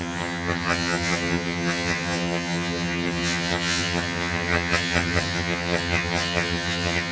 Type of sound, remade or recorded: remade